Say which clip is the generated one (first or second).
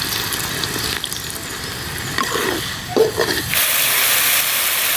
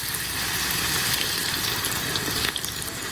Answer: second